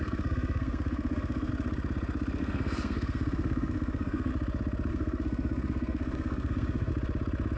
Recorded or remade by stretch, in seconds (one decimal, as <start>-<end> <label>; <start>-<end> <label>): 0.0-1.5 remade; 1.5-2.4 recorded; 2.4-4.3 remade; 4.3-4.9 recorded; 4.9-6.9 remade; 6.9-7.6 recorded